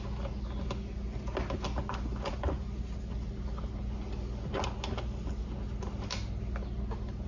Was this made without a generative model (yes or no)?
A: yes